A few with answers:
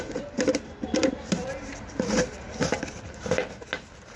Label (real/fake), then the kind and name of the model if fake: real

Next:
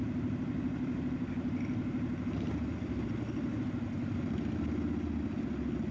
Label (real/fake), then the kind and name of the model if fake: real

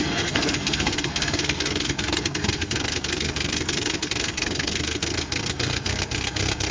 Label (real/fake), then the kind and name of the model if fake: fake, codec, SNAC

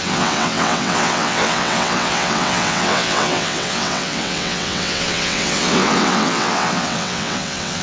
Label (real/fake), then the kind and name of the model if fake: fake, vocoder, WaveNeXt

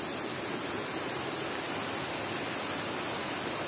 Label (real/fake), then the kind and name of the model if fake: real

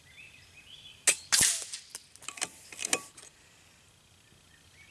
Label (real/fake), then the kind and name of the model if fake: real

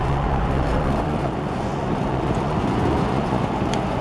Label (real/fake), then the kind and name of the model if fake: fake, vocoder, Vocos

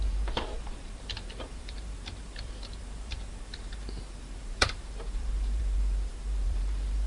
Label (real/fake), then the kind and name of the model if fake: fake, vocoder, BigVGAN v2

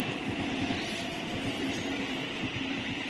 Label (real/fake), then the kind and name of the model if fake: real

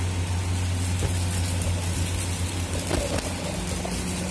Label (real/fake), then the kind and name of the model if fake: real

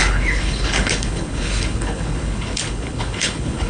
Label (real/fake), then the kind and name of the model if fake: fake, codec, HILCodec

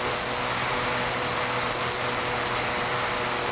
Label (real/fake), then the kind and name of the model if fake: real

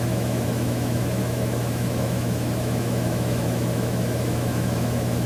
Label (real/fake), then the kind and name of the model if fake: fake, autoencoder, DAC-VAE